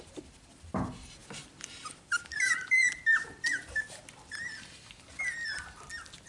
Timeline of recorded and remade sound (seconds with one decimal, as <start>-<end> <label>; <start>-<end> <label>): 0.0-6.3 recorded